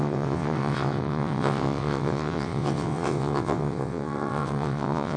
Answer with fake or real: fake